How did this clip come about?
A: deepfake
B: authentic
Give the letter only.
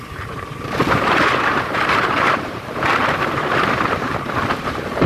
A